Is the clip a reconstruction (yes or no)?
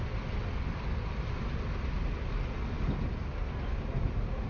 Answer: no